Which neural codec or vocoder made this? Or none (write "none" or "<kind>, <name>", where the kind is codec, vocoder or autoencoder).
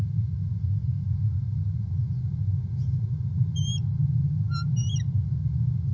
none